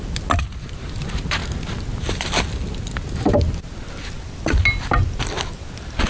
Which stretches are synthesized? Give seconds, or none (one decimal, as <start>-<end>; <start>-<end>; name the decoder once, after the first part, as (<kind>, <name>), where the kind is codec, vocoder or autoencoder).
none